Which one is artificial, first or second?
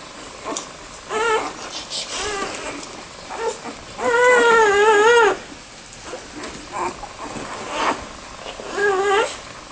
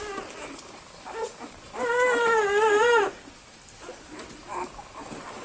second